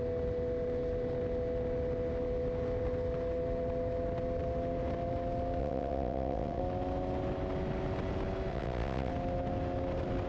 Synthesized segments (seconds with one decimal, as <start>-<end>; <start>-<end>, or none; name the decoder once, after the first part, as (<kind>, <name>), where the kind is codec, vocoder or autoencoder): 5.6-6.6 (vocoder, WaveNeXt); 8.5-9.1